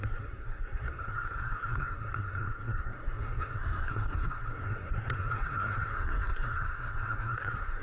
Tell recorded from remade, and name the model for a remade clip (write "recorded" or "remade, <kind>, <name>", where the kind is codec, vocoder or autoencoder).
remade, codec, SNAC